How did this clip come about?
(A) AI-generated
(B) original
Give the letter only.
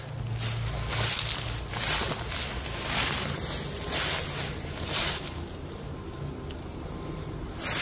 B